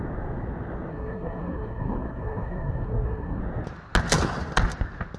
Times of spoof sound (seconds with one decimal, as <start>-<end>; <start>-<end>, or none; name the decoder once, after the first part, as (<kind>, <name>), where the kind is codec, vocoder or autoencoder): 0.9-3.4 (codec, SNAC)